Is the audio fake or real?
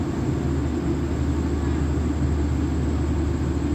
real